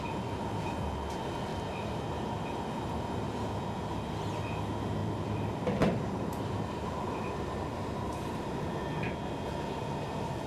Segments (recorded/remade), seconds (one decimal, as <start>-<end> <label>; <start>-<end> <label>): 0.0-1.5 recorded; 1.5-3.6 remade; 3.6-5.0 recorded; 5.0-8.7 remade; 8.7-10.5 recorded